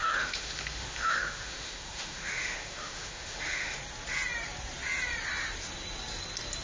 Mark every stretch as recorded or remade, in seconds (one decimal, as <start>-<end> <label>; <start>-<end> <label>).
0.0-3.8 remade; 3.8-6.6 recorded